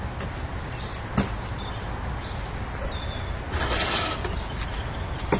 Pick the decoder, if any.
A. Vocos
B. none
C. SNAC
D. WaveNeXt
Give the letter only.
B